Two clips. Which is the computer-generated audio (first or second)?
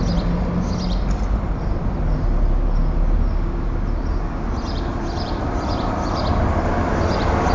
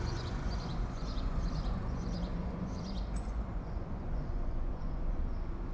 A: second